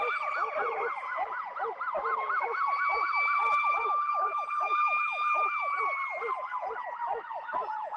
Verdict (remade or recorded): recorded